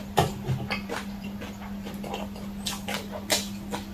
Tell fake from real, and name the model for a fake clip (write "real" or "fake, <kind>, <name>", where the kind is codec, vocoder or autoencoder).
real